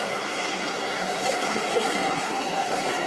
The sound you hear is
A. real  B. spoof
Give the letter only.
B